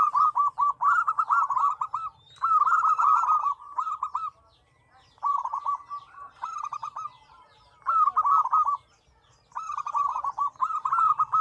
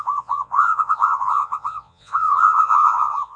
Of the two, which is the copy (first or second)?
second